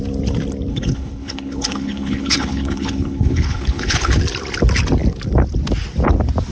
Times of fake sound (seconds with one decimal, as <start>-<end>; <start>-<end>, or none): 0.7-4.2